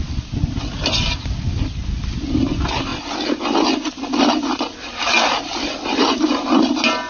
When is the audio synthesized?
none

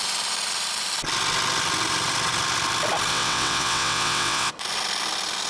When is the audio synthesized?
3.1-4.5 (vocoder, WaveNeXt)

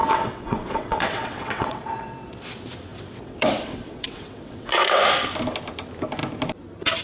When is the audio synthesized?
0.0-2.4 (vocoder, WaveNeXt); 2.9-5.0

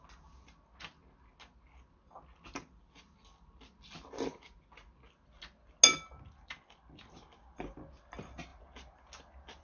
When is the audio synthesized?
none

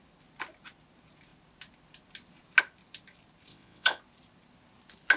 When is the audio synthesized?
3.5-4.0 (vocoder, WaveNeXt)

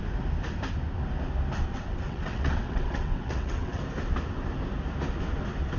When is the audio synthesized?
1.7-3.8 (vocoder, WaveNeXt)

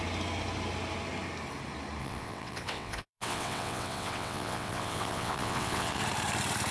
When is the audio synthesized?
2.0-6.0 (vocoder, WaveNeXt)